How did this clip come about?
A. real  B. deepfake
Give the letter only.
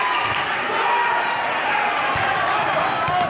A